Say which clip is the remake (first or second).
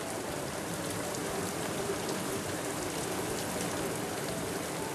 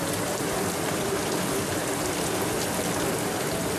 first